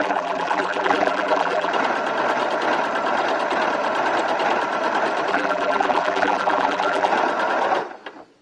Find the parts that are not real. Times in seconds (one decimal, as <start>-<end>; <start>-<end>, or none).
0.0-1.7; 5.3-7.1

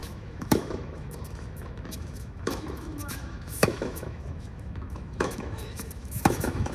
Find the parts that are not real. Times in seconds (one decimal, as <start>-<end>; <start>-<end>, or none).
0.0-6.7